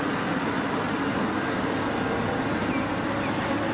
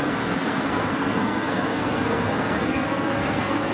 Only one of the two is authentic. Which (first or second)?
first